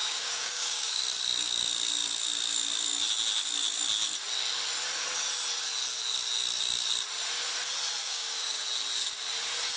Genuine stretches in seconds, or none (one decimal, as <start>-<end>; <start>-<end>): 1.0-8.0; 8.6-9.8